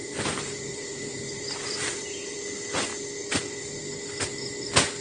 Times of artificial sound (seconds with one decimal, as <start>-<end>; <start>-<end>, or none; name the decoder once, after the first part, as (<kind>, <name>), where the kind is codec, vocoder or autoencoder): 0.0-2.4 (vocoder, BigVGAN v2)